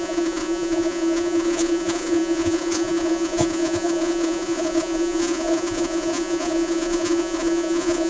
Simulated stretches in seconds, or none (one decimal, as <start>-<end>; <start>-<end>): 0.0-8.1